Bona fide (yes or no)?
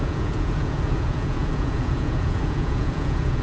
no